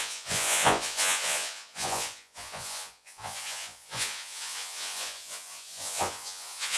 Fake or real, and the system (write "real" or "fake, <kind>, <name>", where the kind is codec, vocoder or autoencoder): fake, vocoder, Vocos